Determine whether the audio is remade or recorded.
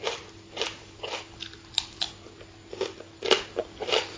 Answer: recorded